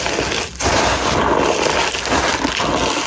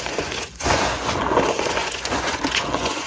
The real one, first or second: first